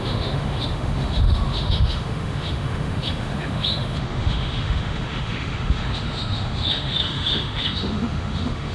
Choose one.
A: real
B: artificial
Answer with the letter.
B